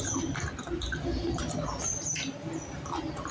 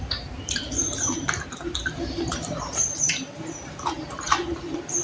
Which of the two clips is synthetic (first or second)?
second